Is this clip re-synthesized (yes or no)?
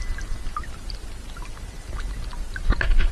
no